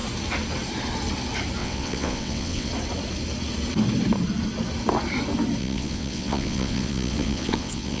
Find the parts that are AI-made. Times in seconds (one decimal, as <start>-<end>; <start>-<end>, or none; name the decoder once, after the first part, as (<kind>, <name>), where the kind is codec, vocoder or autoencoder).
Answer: 1.6-2.7 (vocoder, WaveNeXt); 5.6-8.0